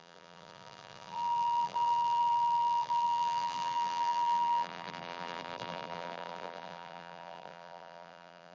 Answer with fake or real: fake